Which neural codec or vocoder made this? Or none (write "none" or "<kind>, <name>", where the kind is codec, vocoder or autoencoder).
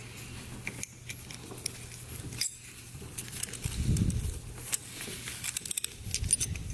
none